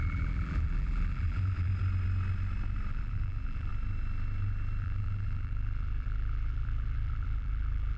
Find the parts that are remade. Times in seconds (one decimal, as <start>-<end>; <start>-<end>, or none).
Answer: 0.0-1.7; 2.9-3.7; 4.8-8.0